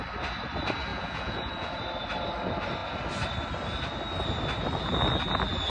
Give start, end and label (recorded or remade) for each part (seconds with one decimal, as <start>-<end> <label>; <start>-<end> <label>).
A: 0.0-0.9 recorded; 0.9-1.8 remade; 1.8-5.7 recorded